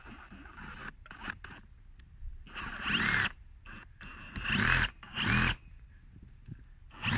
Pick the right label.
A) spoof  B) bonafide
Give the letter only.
B